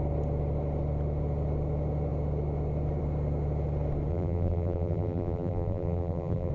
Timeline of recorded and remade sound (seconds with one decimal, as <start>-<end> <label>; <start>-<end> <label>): 0.0-4.1 recorded; 4.1-6.5 remade